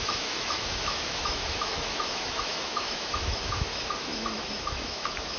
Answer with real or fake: fake